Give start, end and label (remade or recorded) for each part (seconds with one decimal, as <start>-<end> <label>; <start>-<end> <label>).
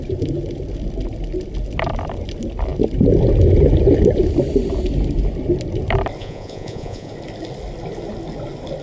0.0-6.2 recorded; 6.2-7.1 remade; 7.1-8.8 recorded